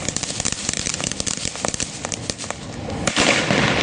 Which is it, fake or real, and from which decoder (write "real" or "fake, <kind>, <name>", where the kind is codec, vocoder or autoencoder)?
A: real